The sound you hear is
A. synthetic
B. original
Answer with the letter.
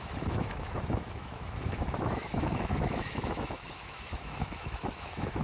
A